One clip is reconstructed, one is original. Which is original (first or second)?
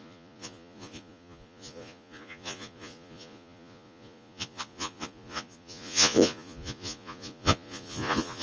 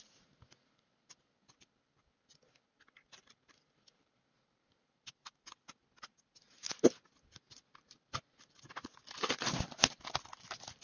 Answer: second